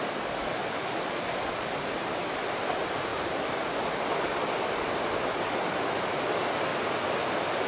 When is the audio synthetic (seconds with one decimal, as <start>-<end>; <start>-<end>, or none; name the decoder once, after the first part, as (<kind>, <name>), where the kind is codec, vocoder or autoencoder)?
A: 6.7-7.7 (vocoder, BigVGAN v2)